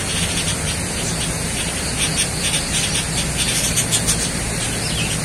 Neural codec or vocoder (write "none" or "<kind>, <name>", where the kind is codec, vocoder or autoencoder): none